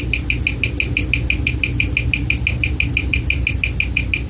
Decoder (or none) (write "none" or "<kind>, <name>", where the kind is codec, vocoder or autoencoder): none